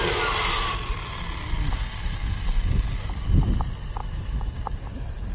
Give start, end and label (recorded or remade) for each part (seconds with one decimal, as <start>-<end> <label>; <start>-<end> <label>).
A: 0.0-4.0 recorded; 4.0-4.6 remade; 4.6-5.3 recorded